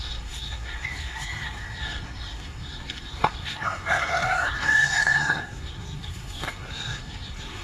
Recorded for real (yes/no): no